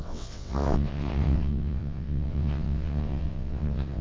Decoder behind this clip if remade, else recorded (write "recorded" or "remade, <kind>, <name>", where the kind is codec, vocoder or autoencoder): remade, vocoder, WaveNeXt